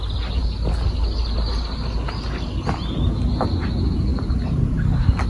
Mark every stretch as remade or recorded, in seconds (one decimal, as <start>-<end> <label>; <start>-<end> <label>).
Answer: 0.0-5.3 recorded